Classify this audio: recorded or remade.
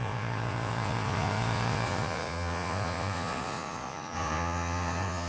remade